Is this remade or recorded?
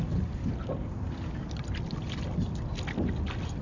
recorded